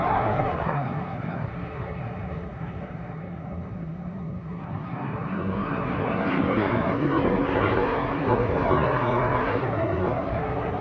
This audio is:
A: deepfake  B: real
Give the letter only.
A